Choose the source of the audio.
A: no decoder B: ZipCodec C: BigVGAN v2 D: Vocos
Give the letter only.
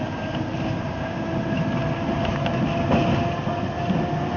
A